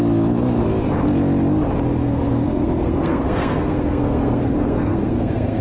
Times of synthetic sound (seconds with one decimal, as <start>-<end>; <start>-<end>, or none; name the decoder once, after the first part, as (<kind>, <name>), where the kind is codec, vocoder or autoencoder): 2.0-5.6 (codec, SNAC)